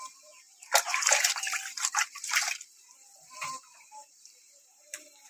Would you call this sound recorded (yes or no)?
no